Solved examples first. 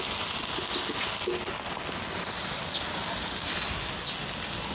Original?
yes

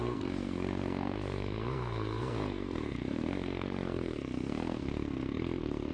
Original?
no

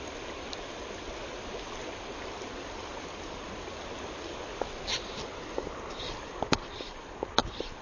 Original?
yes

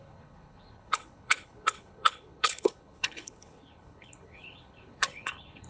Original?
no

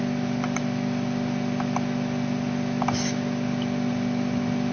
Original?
yes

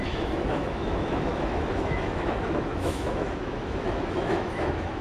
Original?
no